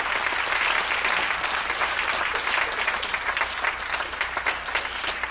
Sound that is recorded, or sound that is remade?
recorded